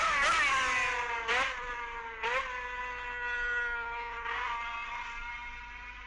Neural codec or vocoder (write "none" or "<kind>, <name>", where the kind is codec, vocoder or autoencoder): none